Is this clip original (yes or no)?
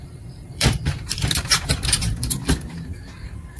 no